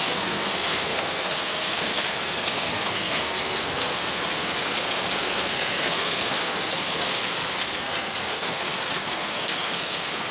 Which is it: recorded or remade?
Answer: remade